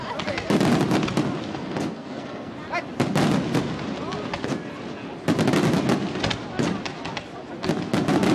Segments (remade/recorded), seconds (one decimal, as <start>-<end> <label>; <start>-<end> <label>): 0.0-1.5 recorded; 1.5-2.5 remade; 2.5-8.3 recorded